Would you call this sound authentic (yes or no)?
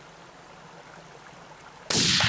yes